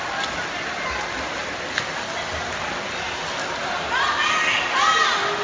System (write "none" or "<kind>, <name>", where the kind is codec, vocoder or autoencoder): none